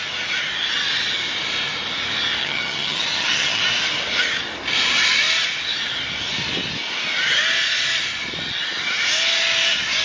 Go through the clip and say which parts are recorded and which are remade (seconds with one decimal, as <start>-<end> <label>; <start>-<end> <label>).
0.0-2.4 recorded; 2.4-3.6 remade; 3.6-10.0 recorded